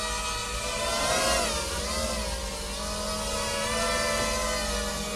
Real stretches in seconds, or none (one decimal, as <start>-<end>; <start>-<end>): 0.0-0.4; 2.1-3.3; 4.2-5.2